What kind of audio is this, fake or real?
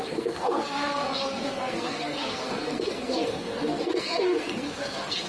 fake